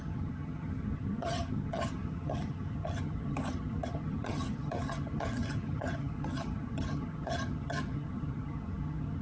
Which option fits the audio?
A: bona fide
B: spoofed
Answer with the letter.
B